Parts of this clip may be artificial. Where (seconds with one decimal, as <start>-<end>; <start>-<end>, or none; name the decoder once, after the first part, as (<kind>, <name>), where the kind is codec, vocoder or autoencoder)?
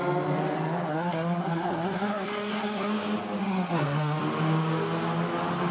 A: 0.9-2.9 (codec, SNAC); 3.4-4.2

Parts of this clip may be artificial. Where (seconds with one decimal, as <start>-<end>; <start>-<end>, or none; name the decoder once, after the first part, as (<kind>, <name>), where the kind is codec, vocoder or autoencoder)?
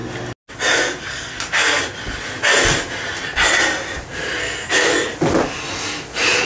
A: 1.1-1.8 (codec, SNAC); 4.4-4.9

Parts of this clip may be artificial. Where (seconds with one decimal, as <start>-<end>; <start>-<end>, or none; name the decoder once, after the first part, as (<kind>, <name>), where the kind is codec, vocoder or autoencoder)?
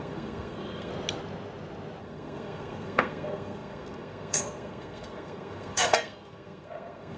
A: 0.0-0.9 (codec, SNAC); 2.0-7.2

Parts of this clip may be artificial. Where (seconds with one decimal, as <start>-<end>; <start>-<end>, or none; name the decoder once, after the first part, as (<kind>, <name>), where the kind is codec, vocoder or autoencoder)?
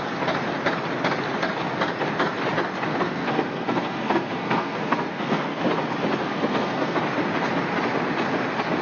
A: 2.9-5.6 (codec, SNAC); 6.2-7.0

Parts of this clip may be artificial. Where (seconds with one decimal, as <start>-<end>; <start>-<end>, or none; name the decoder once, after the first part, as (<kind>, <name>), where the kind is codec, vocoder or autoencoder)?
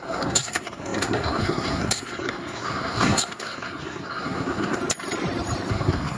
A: 0.0-4.8 (codec, SNAC); 5.7-6.2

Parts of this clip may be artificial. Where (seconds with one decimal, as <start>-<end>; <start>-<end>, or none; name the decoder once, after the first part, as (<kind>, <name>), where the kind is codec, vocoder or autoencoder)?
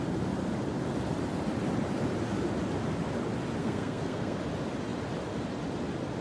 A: 3.6-4.4 (codec, SNAC)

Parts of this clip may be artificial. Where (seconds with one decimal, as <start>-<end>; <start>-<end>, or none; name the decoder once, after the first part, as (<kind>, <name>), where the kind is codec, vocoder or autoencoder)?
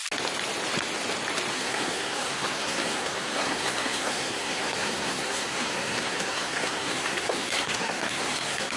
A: 1.5-8.8 (codec, SNAC)